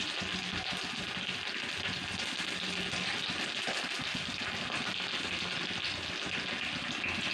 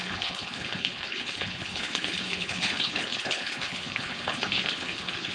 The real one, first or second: first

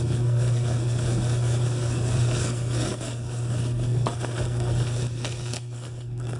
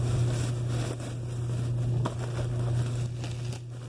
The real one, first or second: second